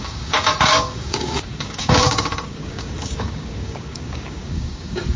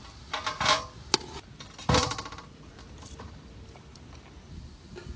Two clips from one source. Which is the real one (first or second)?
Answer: second